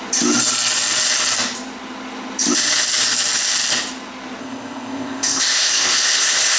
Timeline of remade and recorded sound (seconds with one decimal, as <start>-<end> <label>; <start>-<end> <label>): 0.0-4.4 recorded; 4.4-6.6 remade